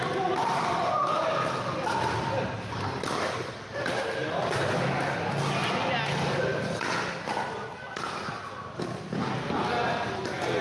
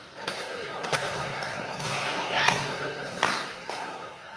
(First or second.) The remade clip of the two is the second